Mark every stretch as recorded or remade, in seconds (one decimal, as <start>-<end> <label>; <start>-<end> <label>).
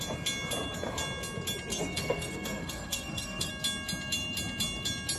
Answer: 0.0-1.7 recorded; 1.7-3.5 remade; 3.5-5.2 recorded